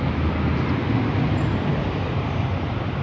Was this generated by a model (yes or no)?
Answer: no